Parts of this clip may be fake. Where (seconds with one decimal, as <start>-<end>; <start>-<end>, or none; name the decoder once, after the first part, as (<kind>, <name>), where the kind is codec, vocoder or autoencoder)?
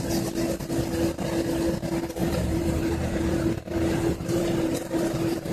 2.2-5.5 (vocoder, BigVGAN v2)